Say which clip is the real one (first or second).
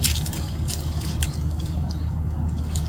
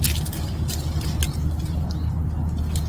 second